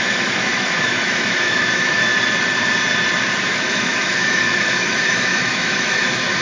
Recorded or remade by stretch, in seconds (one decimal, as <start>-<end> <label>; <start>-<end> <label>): 0.0-2.1 remade; 2.1-3.5 recorded; 3.5-6.4 remade